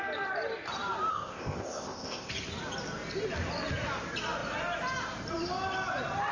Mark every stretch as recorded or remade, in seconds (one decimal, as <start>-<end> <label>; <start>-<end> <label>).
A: 0.0-1.1 recorded; 1.1-2.3 remade; 2.3-6.3 recorded